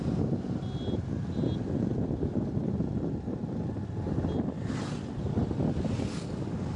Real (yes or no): yes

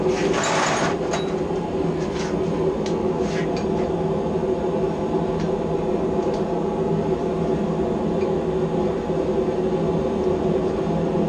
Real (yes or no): yes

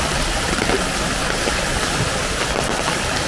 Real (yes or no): yes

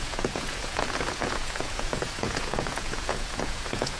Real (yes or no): no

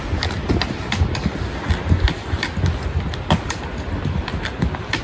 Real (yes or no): yes